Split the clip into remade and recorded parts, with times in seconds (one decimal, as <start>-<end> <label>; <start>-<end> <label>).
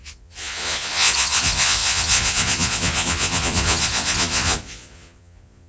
0.0-5.7 remade